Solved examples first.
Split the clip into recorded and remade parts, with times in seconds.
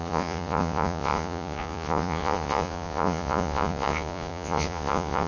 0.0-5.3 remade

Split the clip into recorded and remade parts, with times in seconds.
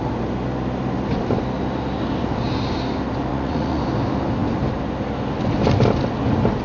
0.0-3.3 recorded; 3.3-3.8 remade; 3.8-6.6 recorded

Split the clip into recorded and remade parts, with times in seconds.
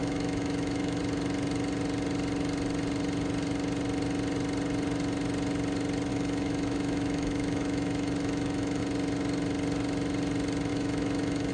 0.0-1.0 remade; 1.0-6.1 recorded; 6.1-8.8 remade; 8.8-10.7 recorded; 10.7-11.5 remade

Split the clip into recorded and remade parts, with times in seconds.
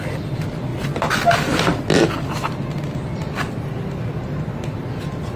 0.0-5.4 recorded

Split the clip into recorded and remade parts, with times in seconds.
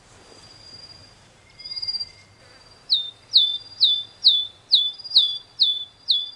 0.0-1.0 recorded; 1.0-2.3 remade; 2.3-6.4 recorded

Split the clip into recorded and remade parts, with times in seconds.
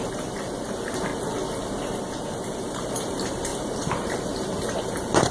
0.0-1.1 remade; 1.1-2.6 recorded; 2.6-5.3 remade